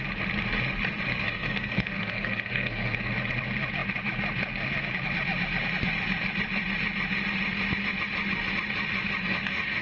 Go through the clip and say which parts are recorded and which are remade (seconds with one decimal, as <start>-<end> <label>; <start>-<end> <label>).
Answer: 0.0-1.1 recorded; 1.1-3.1 remade; 3.1-9.2 recorded; 9.2-9.8 remade